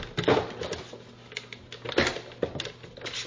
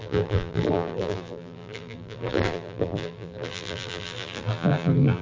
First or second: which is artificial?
second